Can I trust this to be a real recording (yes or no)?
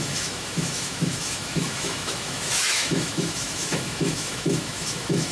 no